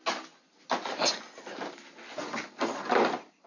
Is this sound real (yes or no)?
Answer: yes